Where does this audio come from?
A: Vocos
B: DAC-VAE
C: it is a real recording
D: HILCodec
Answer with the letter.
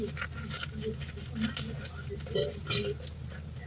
C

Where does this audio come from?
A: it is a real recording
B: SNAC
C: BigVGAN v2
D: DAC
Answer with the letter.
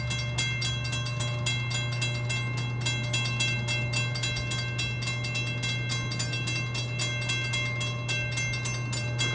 A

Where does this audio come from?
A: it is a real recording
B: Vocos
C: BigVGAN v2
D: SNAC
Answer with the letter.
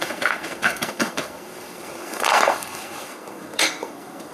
D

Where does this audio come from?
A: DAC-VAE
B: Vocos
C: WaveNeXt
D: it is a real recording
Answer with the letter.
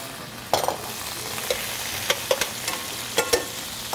D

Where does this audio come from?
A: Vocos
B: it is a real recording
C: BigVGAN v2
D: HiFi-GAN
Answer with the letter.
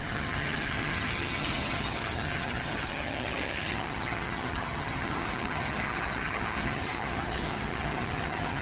D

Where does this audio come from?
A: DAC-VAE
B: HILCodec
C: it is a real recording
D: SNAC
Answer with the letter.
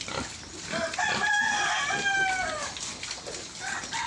C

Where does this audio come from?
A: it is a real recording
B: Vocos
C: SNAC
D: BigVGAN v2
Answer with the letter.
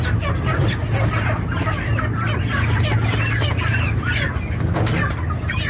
A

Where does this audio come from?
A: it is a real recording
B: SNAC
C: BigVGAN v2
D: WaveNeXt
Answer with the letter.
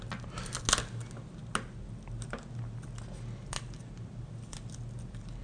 A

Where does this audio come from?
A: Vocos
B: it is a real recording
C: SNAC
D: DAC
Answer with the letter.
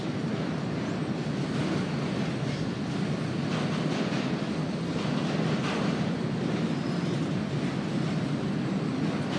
B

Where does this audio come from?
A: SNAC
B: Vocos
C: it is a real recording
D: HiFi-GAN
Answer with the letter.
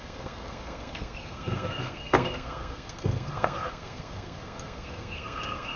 A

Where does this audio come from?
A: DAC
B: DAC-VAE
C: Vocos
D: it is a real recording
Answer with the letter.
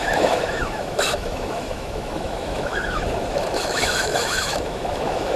B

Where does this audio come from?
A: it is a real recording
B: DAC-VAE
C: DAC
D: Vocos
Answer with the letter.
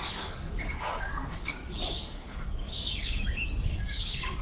C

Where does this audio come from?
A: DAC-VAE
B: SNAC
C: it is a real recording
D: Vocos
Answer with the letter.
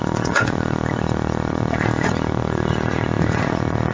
D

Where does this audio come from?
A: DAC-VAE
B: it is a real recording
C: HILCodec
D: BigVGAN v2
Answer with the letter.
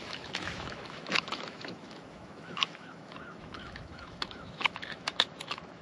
A